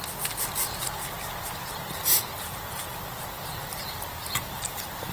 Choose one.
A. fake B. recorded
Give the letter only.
B